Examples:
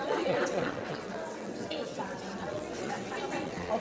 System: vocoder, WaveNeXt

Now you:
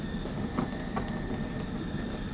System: none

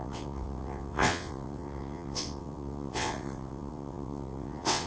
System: vocoder, WaveNeXt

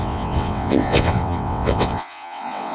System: vocoder, WaveNeXt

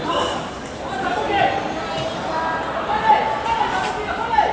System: none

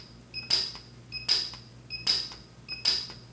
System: none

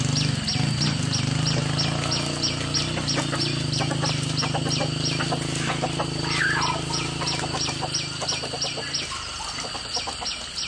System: none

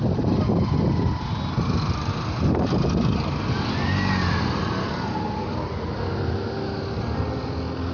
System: none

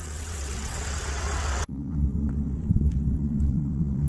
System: vocoder, WaveNeXt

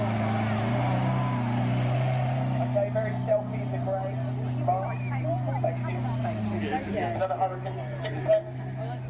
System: none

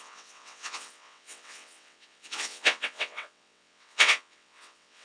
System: vocoder, WaveNeXt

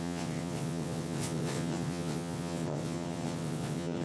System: vocoder, WaveNeXt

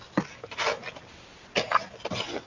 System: none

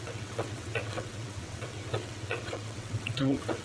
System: vocoder, WaveNeXt